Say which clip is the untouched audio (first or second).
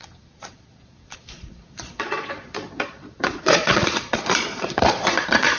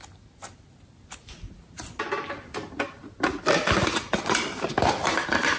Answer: second